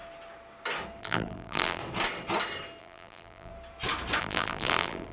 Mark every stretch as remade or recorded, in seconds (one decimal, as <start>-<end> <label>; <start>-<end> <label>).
0.0-1.0 recorded; 1.0-1.8 remade; 1.8-2.8 recorded; 2.8-3.5 remade; 3.5-4.2 recorded; 4.2-5.1 remade